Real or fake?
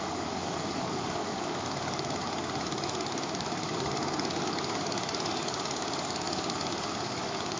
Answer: fake